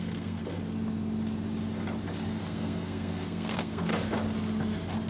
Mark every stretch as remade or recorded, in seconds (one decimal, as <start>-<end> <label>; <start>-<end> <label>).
0.0-0.4 remade; 0.4-2.4 recorded; 2.4-3.9 remade; 3.9-5.1 recorded